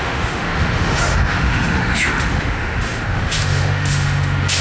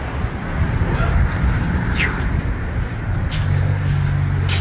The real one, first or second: second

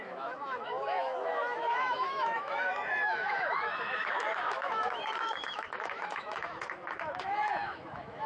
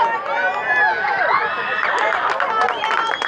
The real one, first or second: second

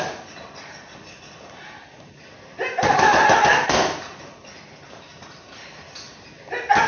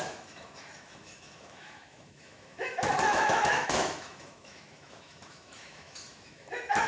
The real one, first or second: first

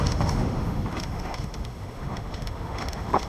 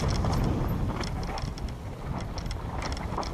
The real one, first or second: second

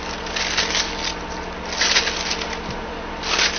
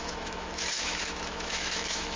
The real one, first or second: first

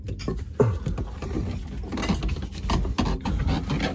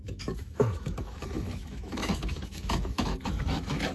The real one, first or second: first